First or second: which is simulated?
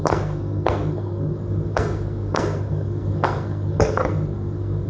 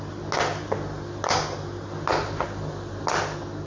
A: first